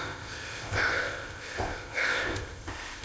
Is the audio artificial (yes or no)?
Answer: yes